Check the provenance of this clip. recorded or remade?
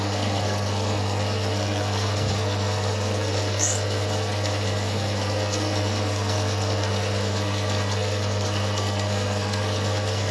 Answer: remade